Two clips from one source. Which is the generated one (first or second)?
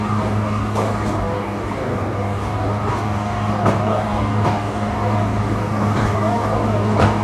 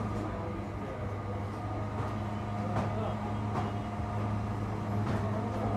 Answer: first